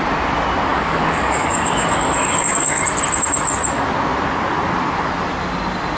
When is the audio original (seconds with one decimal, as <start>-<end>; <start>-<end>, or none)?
0.0-0.7; 2.8-6.0